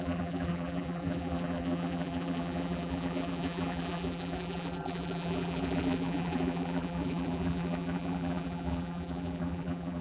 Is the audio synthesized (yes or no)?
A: yes